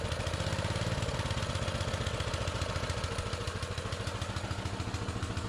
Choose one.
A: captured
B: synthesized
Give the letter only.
A